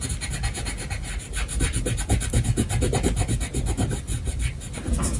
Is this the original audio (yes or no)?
yes